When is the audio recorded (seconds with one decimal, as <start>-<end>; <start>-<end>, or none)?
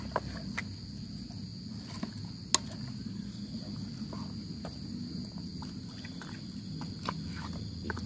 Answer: 0.0-8.1